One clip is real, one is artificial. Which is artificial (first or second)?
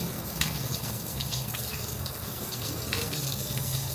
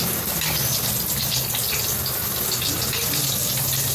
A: first